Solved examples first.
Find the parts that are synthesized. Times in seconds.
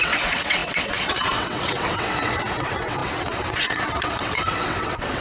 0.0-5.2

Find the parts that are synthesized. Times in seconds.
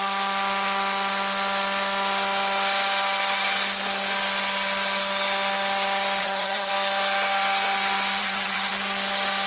6.2-6.7; 8.2-8.7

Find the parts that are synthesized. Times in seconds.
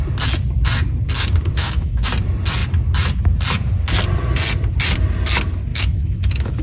1.5-2.1; 5.7-6.6